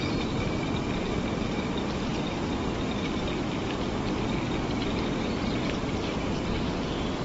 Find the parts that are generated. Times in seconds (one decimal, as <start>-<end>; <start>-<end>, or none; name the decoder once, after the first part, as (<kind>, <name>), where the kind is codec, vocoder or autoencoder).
none